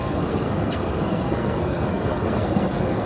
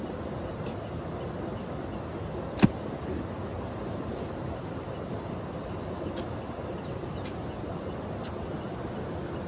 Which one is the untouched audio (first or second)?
second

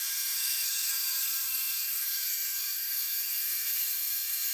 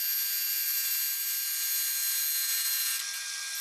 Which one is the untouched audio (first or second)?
second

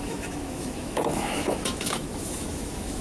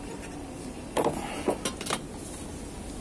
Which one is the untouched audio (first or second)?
second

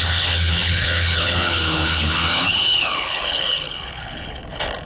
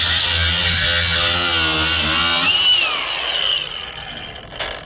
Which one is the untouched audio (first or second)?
second